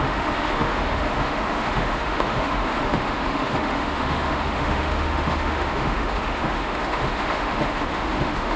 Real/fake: fake